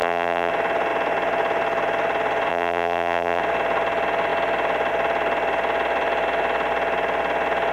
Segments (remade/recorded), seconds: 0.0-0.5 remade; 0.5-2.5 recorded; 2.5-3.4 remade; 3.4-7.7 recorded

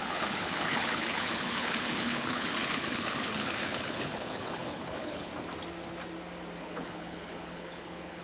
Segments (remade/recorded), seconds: 0.0-5.3 remade; 5.3-6.6 recorded; 6.6-8.2 remade